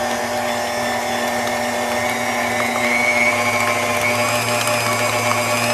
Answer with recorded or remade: recorded